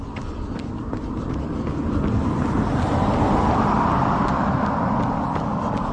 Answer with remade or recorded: recorded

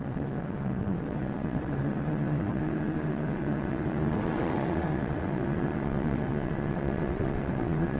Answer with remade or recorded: remade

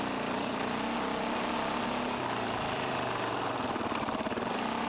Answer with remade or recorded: recorded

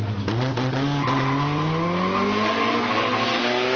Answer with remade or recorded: recorded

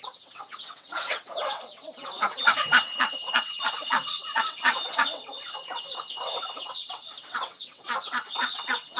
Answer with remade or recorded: remade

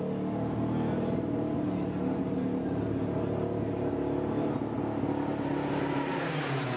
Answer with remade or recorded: recorded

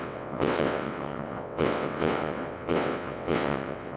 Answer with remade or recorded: remade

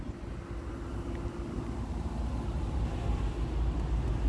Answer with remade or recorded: recorded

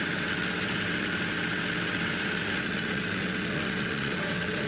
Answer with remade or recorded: remade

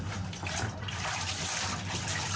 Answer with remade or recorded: recorded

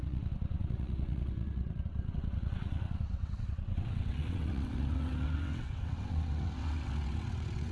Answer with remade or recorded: remade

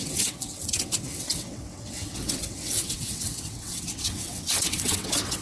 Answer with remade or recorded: remade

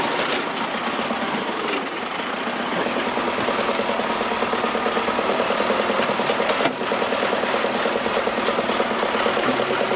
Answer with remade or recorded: recorded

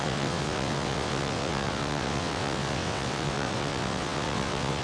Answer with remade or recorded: remade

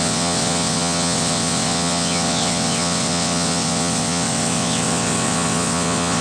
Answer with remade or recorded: remade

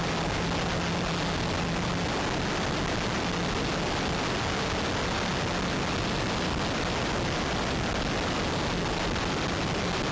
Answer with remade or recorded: recorded